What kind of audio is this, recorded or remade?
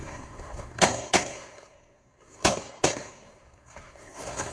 remade